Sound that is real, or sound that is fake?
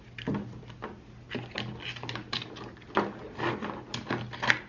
real